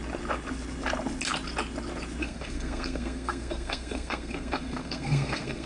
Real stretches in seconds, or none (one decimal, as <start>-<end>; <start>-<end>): 0.0-2.2